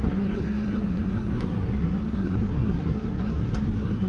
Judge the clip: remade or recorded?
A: remade